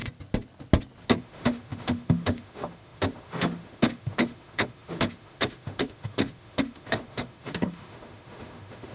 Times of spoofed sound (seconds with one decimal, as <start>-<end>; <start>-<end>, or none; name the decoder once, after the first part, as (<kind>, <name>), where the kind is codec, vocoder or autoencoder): 1.2-8.9 (autoencoder, DAC-VAE)

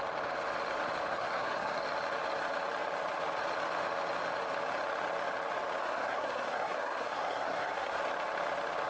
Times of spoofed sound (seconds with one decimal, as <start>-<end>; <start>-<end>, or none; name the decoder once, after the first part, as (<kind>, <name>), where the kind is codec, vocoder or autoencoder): 1.1-1.8 (codec, SNAC); 5.8-8.0

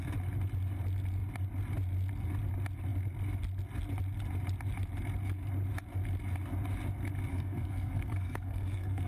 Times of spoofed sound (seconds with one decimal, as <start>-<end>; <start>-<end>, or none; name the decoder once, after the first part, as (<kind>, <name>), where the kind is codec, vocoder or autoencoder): 7.3-9.1 (codec, SNAC)

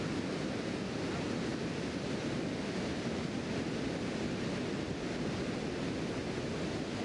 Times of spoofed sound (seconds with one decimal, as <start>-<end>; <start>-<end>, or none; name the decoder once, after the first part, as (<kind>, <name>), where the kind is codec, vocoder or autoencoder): none

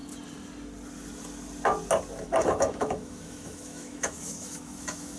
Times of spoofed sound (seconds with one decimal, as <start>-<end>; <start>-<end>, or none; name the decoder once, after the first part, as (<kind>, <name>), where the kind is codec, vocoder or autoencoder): 2.2-5.2 (autoencoder, DAC-VAE)

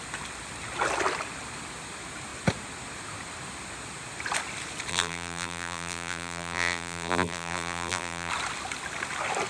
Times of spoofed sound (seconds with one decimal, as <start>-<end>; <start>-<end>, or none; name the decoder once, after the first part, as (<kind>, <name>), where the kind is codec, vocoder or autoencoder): 4.9-8.3 (vocoder, BigVGAN v2)